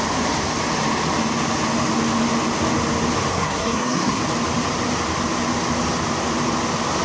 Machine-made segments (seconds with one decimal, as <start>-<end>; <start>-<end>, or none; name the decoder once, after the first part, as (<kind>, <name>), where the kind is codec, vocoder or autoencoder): 3.3-4.2 (codec, SNAC)